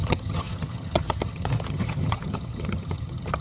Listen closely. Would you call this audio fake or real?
fake